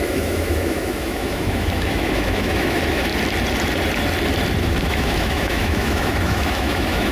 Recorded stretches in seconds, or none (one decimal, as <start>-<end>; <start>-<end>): 3.1-4.6